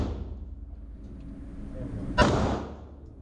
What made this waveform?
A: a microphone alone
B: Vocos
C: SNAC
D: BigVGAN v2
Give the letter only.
A